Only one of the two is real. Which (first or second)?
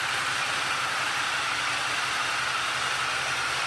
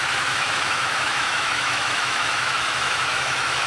first